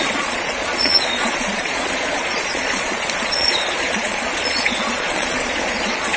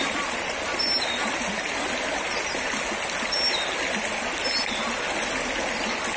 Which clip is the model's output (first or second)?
first